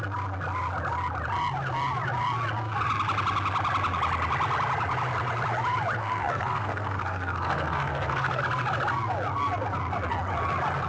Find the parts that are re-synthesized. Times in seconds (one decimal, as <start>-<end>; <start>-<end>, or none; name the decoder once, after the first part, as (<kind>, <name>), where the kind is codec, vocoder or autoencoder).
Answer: 6.0-8.4 (codec, SNAC)